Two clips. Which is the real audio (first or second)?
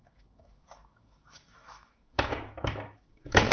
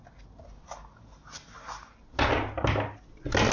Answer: second